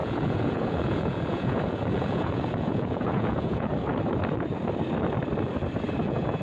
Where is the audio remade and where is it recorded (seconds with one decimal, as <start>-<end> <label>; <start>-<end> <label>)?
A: 0.0-3.7 remade; 3.7-6.0 recorded; 6.0-6.4 remade